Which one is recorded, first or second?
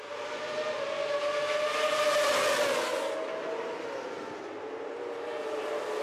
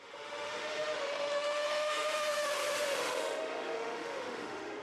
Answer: first